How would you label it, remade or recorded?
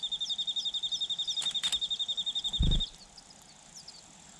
recorded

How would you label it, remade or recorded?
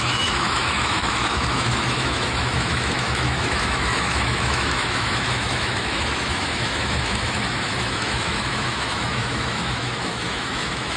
remade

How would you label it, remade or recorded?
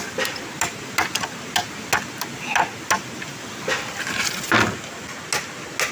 recorded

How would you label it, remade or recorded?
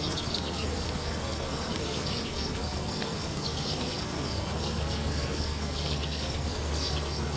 remade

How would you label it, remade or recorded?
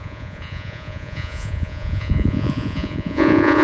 remade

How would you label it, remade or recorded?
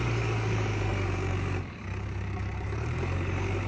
remade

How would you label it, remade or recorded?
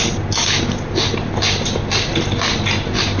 recorded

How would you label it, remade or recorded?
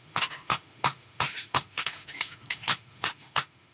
remade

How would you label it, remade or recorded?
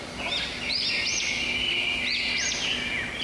recorded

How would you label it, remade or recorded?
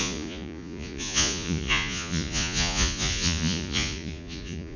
remade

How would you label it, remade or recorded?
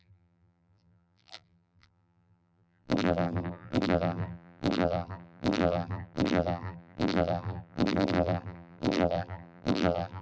remade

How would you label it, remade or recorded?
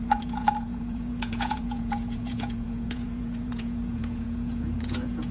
remade